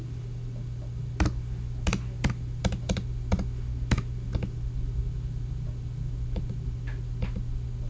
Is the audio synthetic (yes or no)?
no